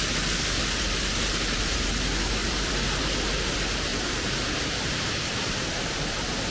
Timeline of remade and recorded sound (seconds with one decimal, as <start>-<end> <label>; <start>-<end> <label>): 0.0-0.8 recorded; 0.8-1.9 remade; 1.9-2.4 recorded; 2.4-3.0 remade; 3.0-3.9 recorded; 3.9-5.8 remade; 5.8-6.5 recorded